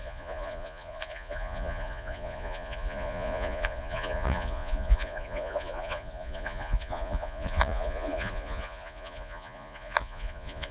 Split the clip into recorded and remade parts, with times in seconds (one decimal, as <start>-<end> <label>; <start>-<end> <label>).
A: 0.0-10.7 remade